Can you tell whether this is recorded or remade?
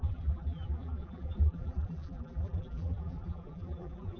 remade